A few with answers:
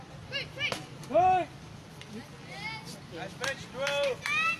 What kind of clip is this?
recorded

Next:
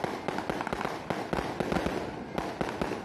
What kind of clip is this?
recorded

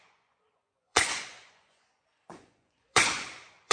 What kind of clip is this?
remade